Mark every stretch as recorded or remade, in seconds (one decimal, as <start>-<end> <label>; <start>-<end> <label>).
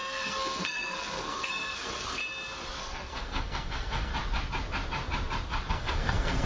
0.0-2.2 remade; 2.2-2.8 recorded; 2.8-4.1 remade; 4.1-5.7 recorded; 5.7-6.5 remade